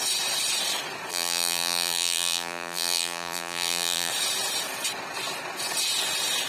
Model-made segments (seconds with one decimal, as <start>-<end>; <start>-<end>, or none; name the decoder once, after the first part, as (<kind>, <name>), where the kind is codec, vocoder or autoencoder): 1.1-4.1 (vocoder, BigVGAN v2)